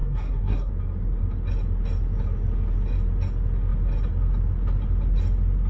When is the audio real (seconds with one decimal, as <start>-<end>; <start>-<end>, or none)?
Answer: 0.7-5.7